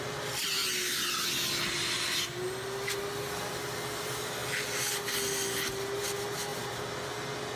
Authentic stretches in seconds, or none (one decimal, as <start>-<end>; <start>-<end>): 0.0-7.6